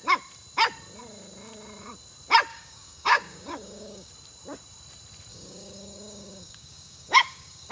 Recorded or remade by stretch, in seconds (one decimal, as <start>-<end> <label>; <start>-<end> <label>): 0.0-2.5 recorded; 2.5-4.1 remade; 4.1-5.3 recorded; 5.3-7.7 remade